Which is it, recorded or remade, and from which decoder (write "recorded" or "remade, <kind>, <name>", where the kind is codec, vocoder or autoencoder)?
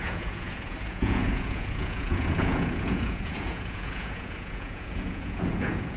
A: remade, vocoder, Vocos